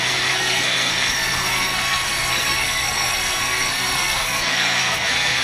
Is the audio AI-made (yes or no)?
yes